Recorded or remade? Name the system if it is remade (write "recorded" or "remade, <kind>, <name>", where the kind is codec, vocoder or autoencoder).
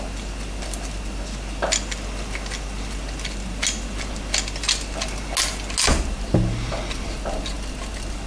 recorded